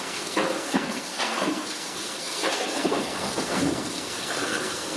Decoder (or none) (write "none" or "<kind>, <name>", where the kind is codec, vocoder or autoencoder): codec, SNAC